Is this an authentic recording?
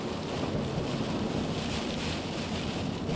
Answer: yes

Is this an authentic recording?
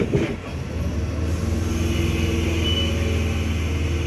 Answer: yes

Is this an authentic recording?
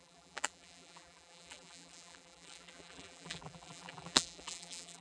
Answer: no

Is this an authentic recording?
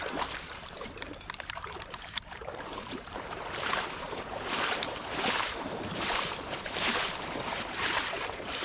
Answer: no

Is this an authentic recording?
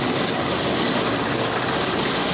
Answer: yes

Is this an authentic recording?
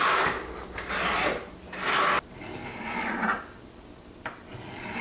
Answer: yes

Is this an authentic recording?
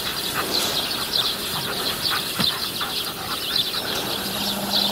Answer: yes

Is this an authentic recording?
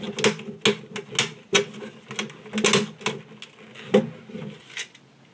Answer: yes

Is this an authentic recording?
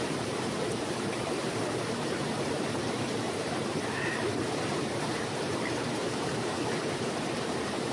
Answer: no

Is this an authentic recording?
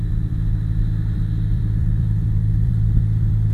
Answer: no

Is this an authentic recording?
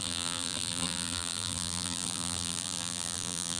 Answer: no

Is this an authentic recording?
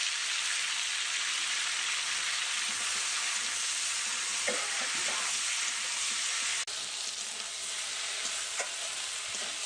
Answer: yes